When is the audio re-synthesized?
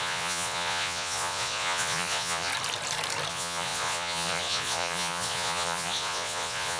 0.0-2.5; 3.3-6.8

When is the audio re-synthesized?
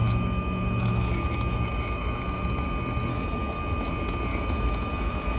0.0-2.4; 3.1-3.9; 4.3-5.4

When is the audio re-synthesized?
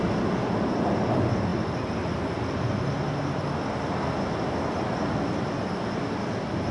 none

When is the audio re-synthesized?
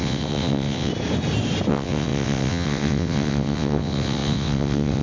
0.0-0.9; 1.7-5.0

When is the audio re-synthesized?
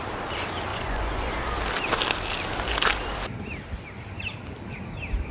0.7-1.3